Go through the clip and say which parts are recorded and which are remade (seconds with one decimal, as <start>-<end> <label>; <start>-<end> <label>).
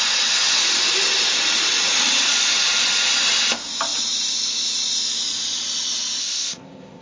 0.0-6.2 recorded; 6.2-7.0 remade